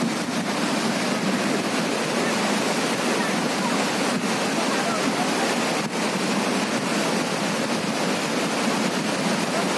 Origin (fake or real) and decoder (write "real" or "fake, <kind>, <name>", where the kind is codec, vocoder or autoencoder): real